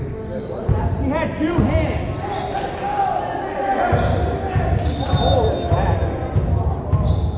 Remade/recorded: recorded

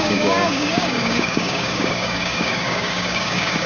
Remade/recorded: remade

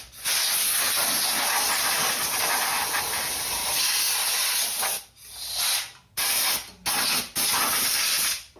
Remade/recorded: recorded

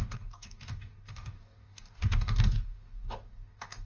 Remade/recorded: remade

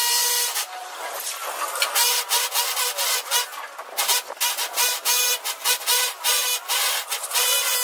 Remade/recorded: recorded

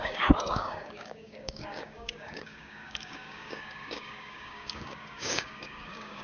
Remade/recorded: remade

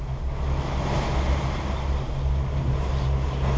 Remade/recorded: recorded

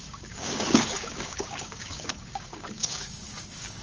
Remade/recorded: remade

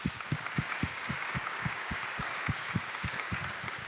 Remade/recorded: remade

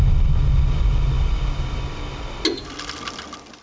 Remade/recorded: recorded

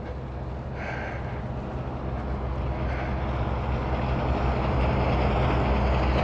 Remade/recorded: recorded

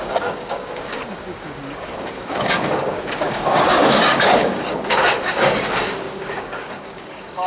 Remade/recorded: remade